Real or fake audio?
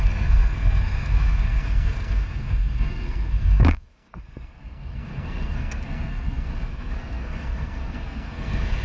fake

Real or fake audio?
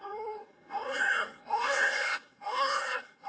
fake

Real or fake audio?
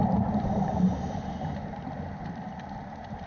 fake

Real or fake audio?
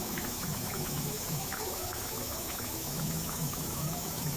fake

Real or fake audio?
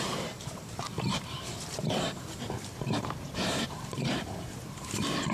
fake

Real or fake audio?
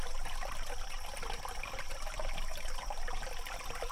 real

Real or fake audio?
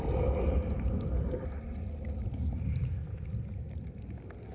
real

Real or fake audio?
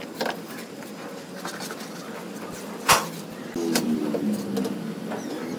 real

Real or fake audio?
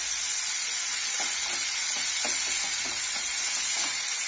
fake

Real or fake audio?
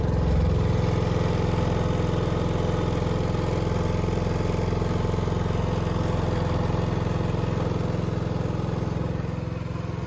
real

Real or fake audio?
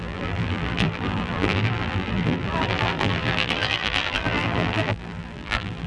fake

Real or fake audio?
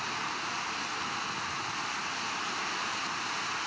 real